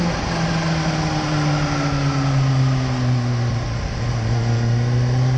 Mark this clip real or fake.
real